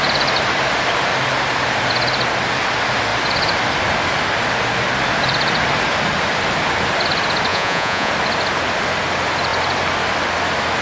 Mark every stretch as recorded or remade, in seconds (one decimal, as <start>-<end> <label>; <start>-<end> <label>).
0.0-7.5 recorded; 7.5-8.1 remade; 8.1-10.8 recorded